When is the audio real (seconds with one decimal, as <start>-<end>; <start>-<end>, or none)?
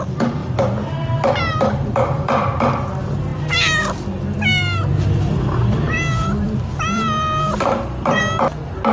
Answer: 0.0-0.4; 2.6-3.3; 8.2-8.9